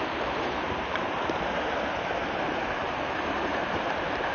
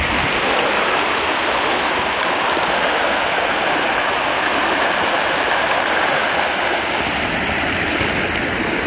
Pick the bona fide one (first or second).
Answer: second